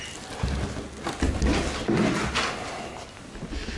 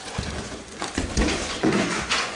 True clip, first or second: first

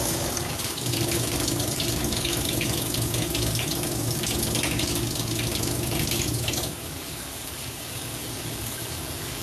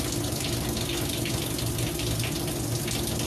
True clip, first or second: second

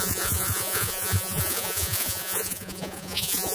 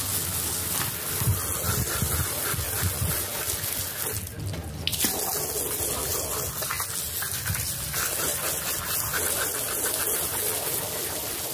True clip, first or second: second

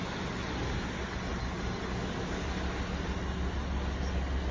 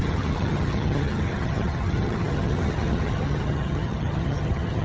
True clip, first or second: first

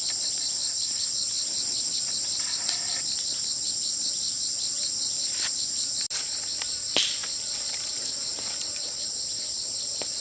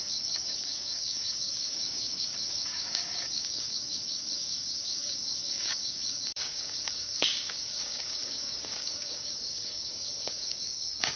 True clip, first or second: first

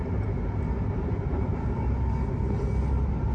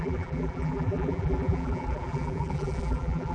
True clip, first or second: first